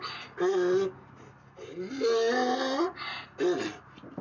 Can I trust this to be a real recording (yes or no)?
yes